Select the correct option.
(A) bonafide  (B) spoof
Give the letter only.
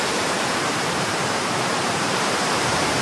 B